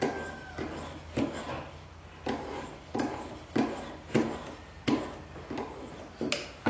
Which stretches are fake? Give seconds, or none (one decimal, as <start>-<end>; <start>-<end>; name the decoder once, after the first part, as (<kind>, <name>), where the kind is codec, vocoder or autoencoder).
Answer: none